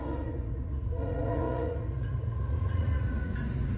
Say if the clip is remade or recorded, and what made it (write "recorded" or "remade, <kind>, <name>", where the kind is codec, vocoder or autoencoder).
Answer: remade, vocoder, Vocos